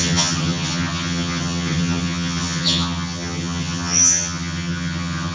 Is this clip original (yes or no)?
no